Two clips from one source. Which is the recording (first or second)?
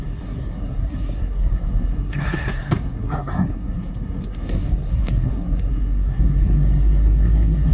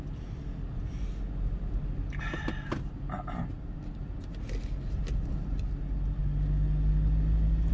second